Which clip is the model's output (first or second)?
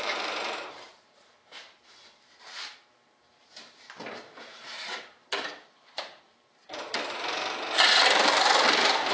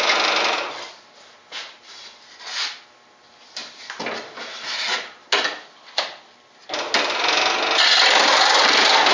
first